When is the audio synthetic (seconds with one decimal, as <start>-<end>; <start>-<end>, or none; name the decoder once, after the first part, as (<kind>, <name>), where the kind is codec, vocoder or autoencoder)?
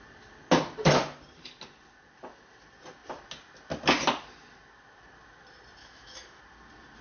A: 5.8-6.4 (autoencoder, DAC-VAE)